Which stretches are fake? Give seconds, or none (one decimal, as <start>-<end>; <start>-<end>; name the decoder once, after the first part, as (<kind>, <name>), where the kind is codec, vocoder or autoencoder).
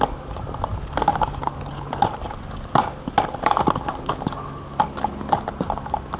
none